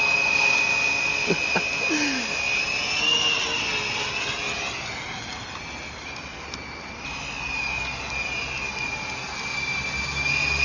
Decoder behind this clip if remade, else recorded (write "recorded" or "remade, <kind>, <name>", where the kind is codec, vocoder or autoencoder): recorded